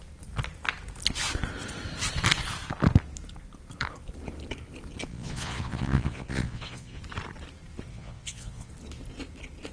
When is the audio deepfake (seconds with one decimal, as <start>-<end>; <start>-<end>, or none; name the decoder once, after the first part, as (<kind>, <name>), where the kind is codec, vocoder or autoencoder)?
5.1-7.0 (vocoder, Vocos); 7.9-8.7